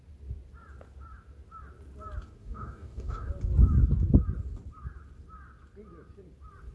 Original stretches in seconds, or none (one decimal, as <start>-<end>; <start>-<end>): 0.0-2.4; 3.3-6.7